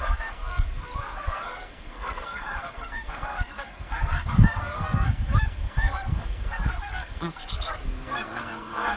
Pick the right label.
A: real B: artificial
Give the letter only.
B